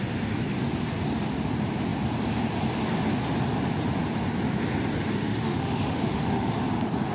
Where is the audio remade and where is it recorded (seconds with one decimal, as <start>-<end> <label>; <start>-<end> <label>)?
0.0-5.1 recorded; 5.1-6.6 remade; 6.6-7.1 recorded